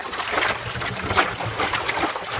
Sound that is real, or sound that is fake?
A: real